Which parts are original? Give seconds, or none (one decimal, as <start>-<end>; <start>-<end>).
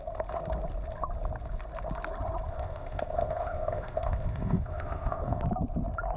0.0-2.5; 5.4-6.2